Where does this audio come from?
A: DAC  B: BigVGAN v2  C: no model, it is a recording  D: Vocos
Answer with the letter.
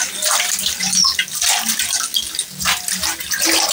C